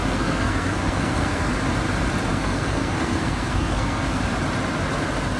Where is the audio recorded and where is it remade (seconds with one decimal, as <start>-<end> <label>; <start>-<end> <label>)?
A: 0.0-1.5 remade; 1.5-2.3 recorded; 2.3-4.2 remade; 4.2-5.4 recorded